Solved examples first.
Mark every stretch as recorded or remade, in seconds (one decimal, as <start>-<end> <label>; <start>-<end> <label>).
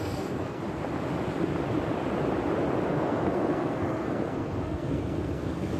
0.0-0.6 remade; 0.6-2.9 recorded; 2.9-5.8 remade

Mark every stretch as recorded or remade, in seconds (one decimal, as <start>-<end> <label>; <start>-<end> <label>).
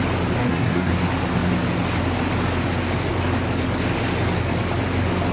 0.0-0.4 recorded; 0.4-0.9 remade; 0.9-5.3 recorded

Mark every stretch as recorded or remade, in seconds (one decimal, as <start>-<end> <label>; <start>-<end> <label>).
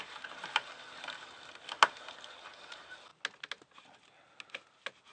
0.0-5.1 recorded